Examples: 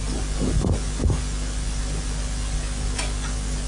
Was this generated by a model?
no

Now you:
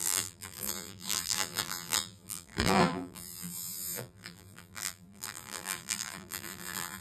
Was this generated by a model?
yes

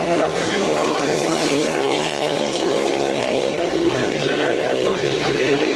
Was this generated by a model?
yes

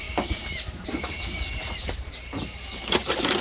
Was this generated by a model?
yes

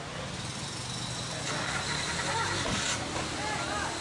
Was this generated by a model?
no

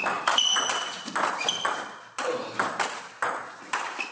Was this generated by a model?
no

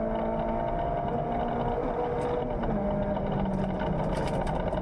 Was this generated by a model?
no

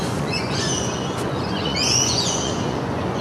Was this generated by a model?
yes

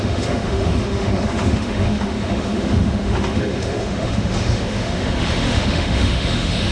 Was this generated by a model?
yes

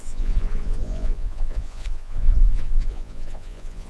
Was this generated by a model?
yes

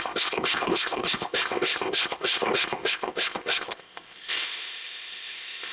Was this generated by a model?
yes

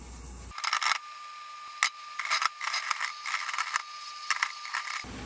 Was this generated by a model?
no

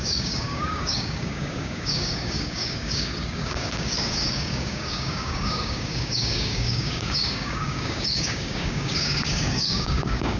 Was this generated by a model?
yes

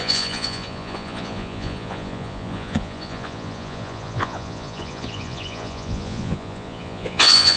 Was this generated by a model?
yes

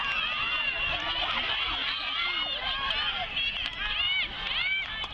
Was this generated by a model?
yes